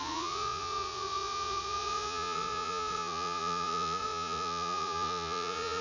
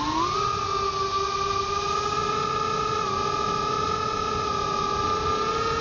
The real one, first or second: second